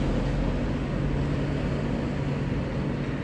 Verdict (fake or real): real